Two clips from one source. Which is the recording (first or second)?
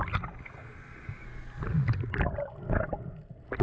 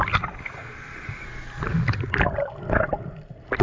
first